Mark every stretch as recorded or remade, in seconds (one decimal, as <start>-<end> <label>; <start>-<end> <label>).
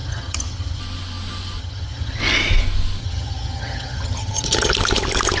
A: 0.0-0.8 remade; 0.8-1.6 recorded; 1.6-2.2 remade; 2.2-3.0 recorded; 3.0-4.7 remade; 4.7-5.4 recorded